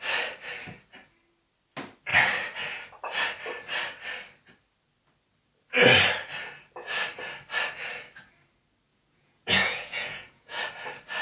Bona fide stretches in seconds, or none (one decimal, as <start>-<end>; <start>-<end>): 0.0-8.9; 10.6-11.2